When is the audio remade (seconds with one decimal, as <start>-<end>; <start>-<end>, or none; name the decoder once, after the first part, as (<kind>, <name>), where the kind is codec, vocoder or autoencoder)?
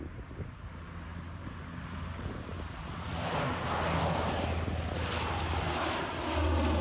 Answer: none